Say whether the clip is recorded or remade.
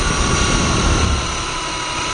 recorded